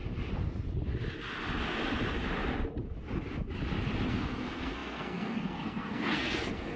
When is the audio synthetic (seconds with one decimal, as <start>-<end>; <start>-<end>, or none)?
4.1-6.8